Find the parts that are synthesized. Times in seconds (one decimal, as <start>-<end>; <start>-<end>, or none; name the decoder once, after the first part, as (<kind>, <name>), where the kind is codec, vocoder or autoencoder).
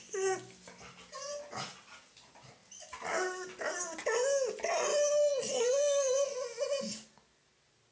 none